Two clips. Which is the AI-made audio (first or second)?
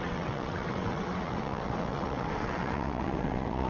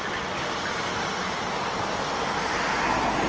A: first